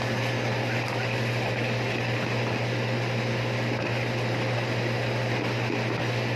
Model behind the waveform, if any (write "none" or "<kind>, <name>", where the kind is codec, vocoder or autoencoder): none